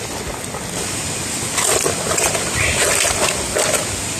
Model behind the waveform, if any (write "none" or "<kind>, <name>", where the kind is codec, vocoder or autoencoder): none